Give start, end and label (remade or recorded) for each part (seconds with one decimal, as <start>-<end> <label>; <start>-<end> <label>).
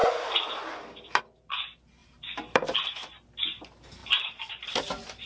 0.0-1.2 remade; 1.2-2.0 recorded; 2.0-2.8 remade; 2.8-4.0 recorded; 4.0-4.8 remade; 4.8-5.3 recorded